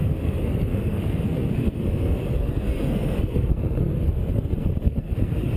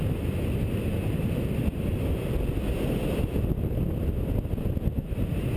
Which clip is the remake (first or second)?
first